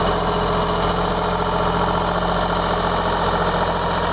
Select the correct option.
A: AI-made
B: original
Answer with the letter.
B